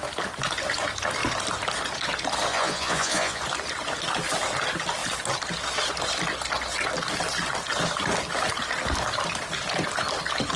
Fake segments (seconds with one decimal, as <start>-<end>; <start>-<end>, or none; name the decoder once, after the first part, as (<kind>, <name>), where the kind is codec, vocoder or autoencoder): 2.5-3.4 (vocoder, Vocos)